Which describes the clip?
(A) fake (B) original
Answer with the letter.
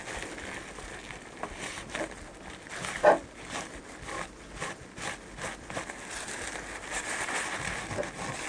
B